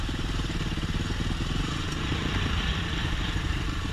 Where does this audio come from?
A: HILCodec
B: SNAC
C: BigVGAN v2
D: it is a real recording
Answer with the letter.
C